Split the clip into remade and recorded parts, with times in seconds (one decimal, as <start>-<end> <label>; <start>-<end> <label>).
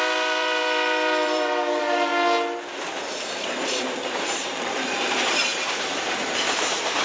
0.0-2.1 remade; 2.1-2.8 recorded; 2.8-7.0 remade